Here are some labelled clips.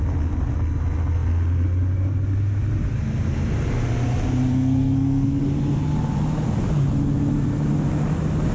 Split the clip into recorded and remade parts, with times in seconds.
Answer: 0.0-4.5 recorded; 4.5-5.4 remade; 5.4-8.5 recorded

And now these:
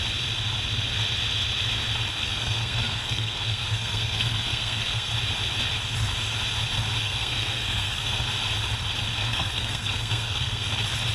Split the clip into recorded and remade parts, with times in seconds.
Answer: 0.0-2.2 recorded; 2.2-5.1 remade; 5.1-7.0 recorded; 7.0-8.3 remade; 8.3-9.1 recorded; 9.1-10.7 remade; 10.7-11.1 recorded